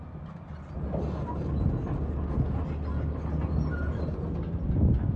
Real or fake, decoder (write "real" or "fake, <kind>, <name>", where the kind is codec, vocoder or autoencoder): real